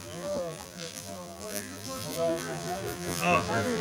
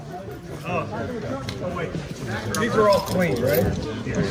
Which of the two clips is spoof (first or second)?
first